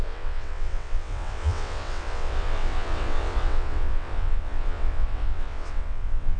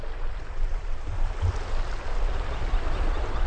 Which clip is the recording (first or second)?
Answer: second